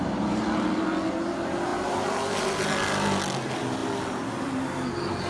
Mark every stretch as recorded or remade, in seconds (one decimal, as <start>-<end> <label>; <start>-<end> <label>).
0.0-5.3 recorded